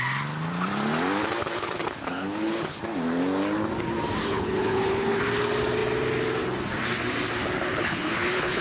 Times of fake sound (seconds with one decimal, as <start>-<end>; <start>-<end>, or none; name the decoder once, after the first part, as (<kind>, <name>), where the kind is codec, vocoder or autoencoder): 1.4-2.8 (codec, HILCodec); 4.2-5.2; 7.7-8.6